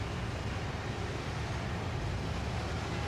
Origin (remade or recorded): recorded